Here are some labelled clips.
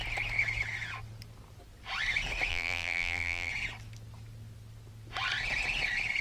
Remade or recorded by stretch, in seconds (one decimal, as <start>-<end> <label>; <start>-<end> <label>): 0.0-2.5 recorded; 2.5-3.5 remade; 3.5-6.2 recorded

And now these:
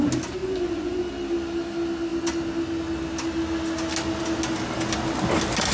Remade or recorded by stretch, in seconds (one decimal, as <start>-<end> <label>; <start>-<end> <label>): 0.0-0.4 recorded; 0.4-1.1 remade; 1.1-5.7 recorded

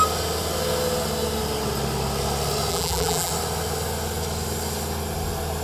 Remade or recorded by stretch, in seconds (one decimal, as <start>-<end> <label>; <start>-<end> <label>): 0.0-2.7 recorded; 2.7-3.3 remade; 3.3-5.6 recorded